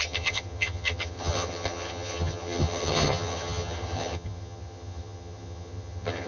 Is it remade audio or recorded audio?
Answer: remade